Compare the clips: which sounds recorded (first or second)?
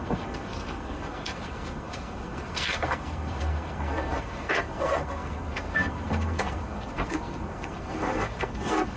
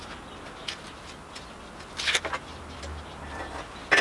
second